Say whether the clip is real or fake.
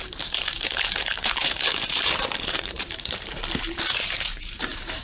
fake